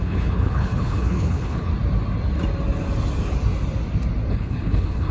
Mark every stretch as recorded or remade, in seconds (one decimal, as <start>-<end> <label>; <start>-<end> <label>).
0.0-1.7 remade; 1.7-4.3 recorded; 4.3-5.1 remade